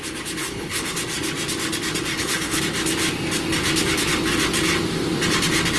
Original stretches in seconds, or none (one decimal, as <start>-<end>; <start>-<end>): 0.0-0.4; 1.0-2.1; 2.6-5.8